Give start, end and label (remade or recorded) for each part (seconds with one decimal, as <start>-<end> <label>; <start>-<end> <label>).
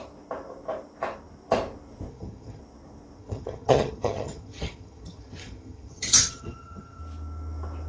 0.0-2.1 recorded; 2.1-2.6 remade; 2.6-3.2 recorded; 3.2-7.0 remade; 7.0-7.9 recorded